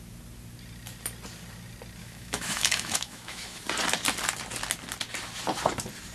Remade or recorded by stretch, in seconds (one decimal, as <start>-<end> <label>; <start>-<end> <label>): 0.0-2.0 recorded; 2.0-3.6 remade; 3.6-6.1 recorded